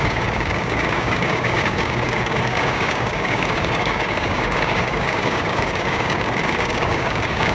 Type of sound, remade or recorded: remade